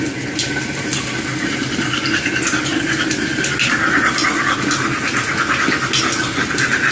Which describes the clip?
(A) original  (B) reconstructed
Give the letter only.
A